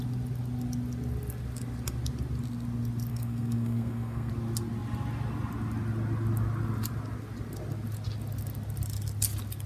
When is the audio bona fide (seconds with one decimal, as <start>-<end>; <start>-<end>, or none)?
0.0-3.1; 4.3-9.7